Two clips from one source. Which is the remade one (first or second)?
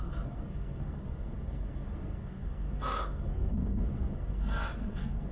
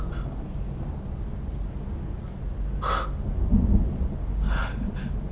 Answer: first